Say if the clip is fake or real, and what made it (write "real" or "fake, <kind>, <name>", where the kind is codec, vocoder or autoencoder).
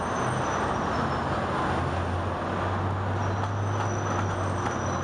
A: real